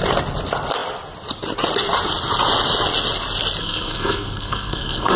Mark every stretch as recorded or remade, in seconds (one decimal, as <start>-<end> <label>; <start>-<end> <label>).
0.0-3.6 recorded; 3.6-5.2 remade